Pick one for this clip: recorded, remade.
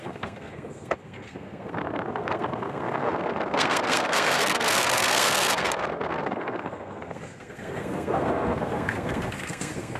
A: remade